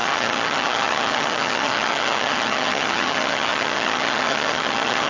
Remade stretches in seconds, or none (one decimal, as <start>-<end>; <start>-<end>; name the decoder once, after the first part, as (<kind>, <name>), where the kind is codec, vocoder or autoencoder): 0.0-5.1 (vocoder, HiFi-GAN)